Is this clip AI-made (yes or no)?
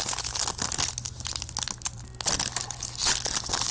no